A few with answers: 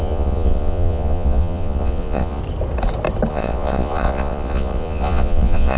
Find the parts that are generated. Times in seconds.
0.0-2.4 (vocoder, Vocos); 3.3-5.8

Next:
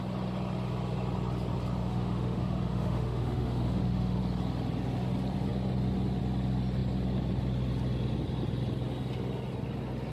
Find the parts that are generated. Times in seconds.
1.8-4.2 (autoencoder, DAC-VAE)

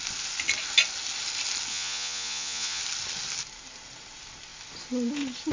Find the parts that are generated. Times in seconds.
1.7-2.8 (vocoder, Vocos)

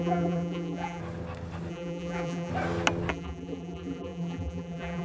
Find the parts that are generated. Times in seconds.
0.0-1.0 (vocoder, BigVGAN v2); 1.7-2.5; 3.1-5.0

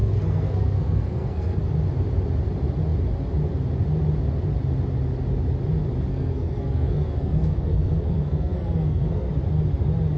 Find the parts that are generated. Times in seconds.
0.0-1.6 (codec, SNAC); 6.1-9.3